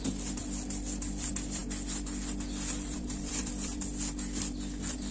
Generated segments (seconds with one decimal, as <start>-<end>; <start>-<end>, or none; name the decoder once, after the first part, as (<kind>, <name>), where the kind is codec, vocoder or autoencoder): none